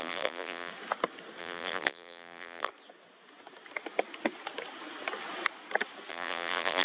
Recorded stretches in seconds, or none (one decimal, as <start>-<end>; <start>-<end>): 0.7-1.4; 2.7-6.1